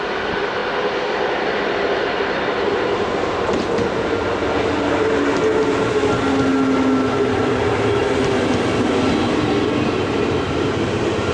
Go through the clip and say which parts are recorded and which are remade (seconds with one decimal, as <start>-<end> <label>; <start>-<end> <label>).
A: 0.0-9.2 recorded; 9.2-11.3 remade